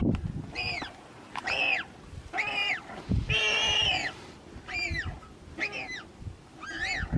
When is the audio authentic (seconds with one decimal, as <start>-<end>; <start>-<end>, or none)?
none